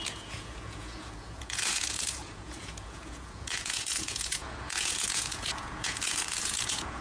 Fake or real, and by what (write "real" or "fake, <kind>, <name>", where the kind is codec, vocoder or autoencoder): fake, vocoder, Vocos